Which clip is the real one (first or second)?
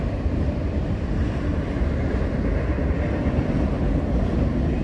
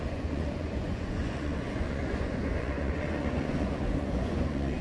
first